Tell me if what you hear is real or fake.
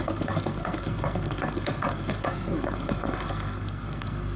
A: fake